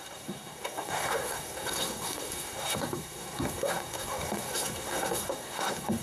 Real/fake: fake